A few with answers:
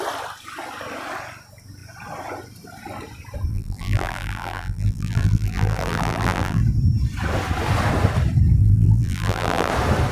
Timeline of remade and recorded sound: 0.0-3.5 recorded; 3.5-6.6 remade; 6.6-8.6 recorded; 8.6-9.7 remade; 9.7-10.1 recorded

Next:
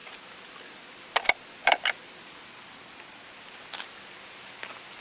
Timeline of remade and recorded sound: 0.0-5.0 recorded

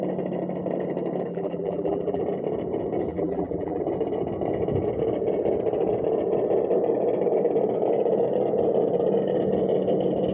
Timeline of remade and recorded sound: 0.0-1.3 recorded; 1.3-2.2 remade; 2.2-3.1 recorded; 3.1-3.8 remade; 3.8-10.3 recorded

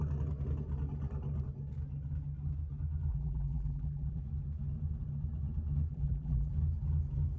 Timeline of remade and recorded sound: 0.0-3.1 recorded; 3.1-4.2 remade; 4.2-5.9 recorded; 5.9-6.5 remade; 6.5-7.4 recorded

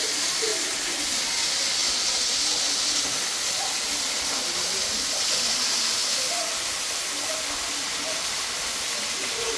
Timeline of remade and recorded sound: 0.0-0.5 recorded; 0.5-1.1 remade; 1.1-6.0 recorded; 6.0-9.0 remade; 9.0-9.6 recorded

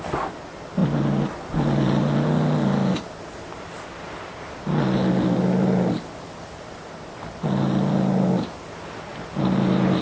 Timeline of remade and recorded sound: 0.0-10.0 recorded

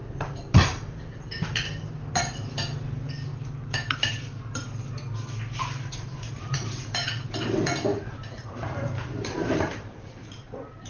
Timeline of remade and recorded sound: 0.0-1.8 remade; 1.8-6.1 recorded; 6.1-7.3 remade; 7.3-7.9 recorded; 7.9-10.5 remade; 10.5-10.9 recorded

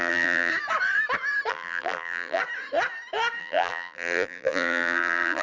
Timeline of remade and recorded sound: 0.0-0.5 remade; 0.5-1.5 recorded; 1.5-2.4 remade; 2.4-3.4 recorded; 3.4-5.4 remade